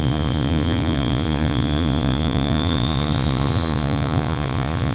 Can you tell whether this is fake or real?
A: fake